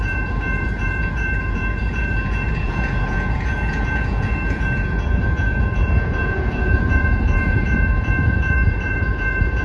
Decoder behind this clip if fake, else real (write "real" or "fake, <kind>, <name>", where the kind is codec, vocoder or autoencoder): fake, vocoder, Vocos